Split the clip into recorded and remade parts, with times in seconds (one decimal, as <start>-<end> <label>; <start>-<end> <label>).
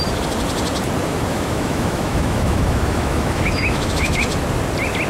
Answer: 0.0-1.1 recorded; 1.1-4.2 remade; 4.2-5.1 recorded